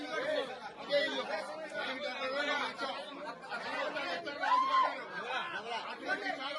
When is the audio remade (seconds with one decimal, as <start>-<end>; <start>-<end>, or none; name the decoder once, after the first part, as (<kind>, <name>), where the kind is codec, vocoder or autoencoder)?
none

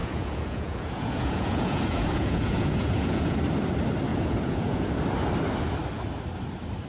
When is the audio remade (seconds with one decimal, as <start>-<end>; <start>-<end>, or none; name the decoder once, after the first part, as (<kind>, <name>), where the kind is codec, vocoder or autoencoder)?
0.0-3.4 (vocoder, Vocos); 4.1-4.9

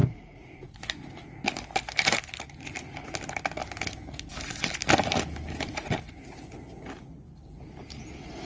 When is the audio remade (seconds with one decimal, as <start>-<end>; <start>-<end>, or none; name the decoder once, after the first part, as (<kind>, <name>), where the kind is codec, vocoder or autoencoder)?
0.0-0.8 (vocoder, Vocos)

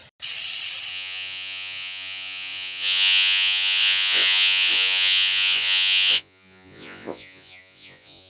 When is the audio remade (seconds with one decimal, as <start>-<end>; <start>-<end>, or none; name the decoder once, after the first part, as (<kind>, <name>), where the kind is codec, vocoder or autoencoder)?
0.9-8.3 (vocoder, Vocos)

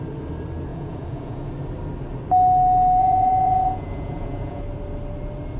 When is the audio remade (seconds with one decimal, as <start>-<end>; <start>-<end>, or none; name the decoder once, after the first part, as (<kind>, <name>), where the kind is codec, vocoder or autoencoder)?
0.7-1.5 (vocoder, Vocos); 3.0-4.6

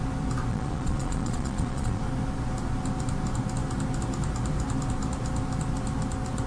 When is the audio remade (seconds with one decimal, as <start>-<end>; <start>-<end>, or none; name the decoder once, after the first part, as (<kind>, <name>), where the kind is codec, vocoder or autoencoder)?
0.5-2.0 (vocoder, Vocos)

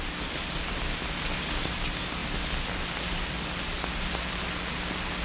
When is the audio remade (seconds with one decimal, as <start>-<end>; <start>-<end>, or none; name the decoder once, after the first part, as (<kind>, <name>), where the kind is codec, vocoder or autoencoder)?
none

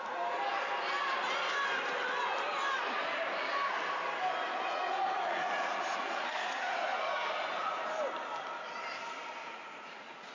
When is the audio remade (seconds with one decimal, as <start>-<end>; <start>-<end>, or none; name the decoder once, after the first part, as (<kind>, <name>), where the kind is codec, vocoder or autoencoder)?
4.5-7.8 (vocoder, Vocos); 9.4-10.3